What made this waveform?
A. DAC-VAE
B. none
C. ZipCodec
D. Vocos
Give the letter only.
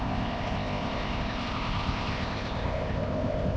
C